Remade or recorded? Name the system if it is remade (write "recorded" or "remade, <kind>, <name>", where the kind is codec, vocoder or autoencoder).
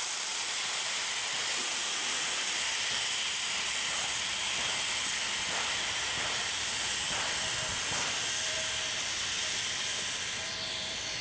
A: remade, vocoder, BigVGAN v2